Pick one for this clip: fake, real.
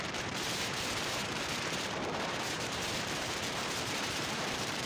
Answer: fake